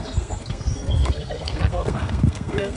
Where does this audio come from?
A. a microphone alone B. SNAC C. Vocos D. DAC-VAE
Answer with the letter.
B